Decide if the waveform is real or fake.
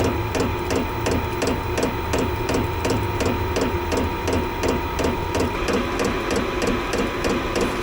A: real